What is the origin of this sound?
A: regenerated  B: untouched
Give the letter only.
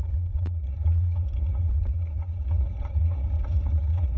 A